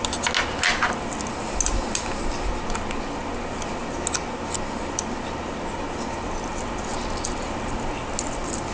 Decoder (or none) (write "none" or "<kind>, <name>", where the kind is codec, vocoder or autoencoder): none